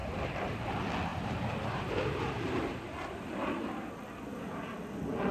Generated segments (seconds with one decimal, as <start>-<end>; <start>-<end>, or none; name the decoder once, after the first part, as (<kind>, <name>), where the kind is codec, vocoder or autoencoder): 0.0-0.7 (vocoder, BigVGAN v2); 1.1-3.6